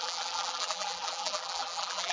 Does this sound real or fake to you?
fake